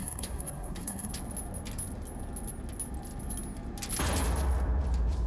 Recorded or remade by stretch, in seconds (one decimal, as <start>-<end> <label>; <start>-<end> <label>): 0.0-1.1 remade; 1.1-5.3 recorded